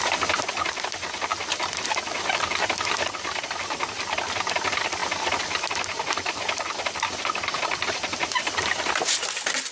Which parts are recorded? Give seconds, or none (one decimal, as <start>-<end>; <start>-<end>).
0.0-9.7